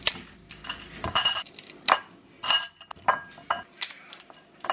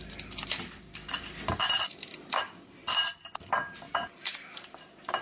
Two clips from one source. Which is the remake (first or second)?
second